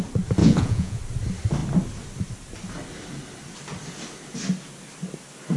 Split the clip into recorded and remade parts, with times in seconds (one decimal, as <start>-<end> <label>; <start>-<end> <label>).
0.0-0.4 recorded; 0.4-1.0 remade; 1.0-5.6 recorded